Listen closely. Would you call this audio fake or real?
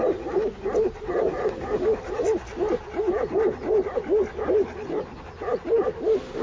real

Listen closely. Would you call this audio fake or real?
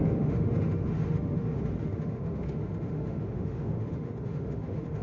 fake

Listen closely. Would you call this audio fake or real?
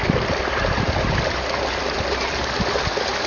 real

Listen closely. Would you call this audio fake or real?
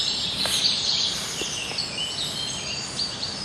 real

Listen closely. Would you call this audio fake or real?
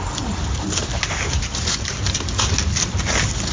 real